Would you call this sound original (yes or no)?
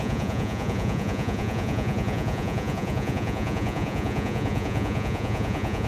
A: no